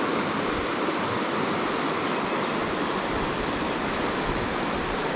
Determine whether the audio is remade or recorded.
recorded